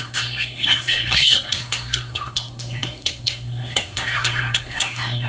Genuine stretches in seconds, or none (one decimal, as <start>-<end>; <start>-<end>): none